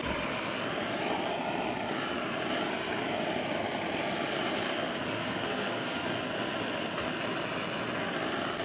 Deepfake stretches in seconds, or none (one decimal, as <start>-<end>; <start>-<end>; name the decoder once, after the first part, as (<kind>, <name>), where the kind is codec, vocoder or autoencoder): 5.2-6.2 (codec, SNAC)